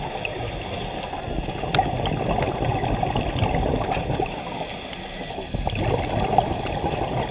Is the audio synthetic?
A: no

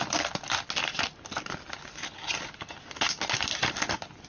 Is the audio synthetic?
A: no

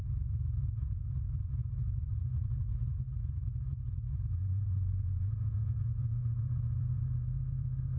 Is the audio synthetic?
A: yes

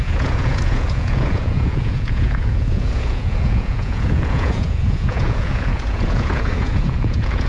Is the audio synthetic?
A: yes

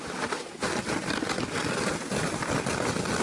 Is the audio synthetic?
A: no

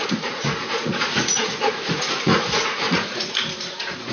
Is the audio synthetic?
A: yes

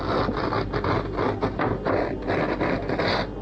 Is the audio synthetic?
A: no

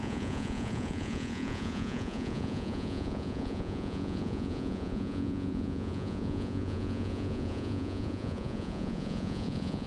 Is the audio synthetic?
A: yes